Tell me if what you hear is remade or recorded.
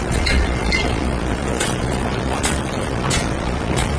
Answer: remade